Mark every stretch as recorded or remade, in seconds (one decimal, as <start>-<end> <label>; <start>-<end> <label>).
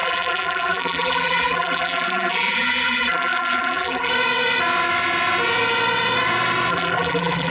0.0-4.1 remade; 4.1-6.7 recorded; 6.7-7.5 remade